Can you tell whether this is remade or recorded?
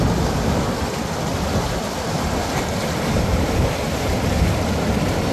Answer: recorded